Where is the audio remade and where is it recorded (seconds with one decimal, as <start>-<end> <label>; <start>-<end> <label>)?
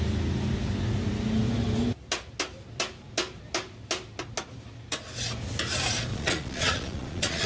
0.0-6.1 recorded; 6.1-7.5 remade